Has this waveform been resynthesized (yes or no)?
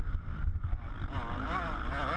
no